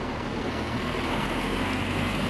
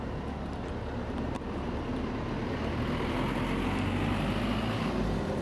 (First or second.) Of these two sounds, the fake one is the first